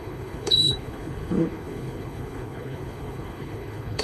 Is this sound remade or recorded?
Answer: remade